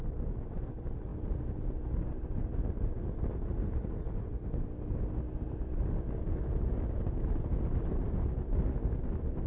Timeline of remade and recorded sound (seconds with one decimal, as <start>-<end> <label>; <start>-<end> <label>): 0.0-9.5 recorded